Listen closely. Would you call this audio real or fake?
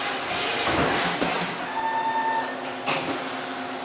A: real